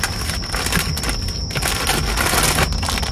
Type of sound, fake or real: real